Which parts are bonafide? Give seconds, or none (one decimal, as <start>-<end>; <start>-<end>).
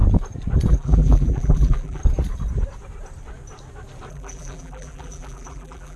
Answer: 0.0-0.7; 2.0-4.1